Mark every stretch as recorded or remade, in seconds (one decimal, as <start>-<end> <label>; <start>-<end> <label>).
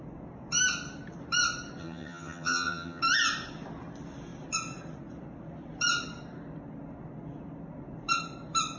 0.0-1.8 recorded; 1.8-3.0 remade; 3.0-8.8 recorded